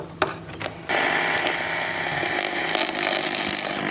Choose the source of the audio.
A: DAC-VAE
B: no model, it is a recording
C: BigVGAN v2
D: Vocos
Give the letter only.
B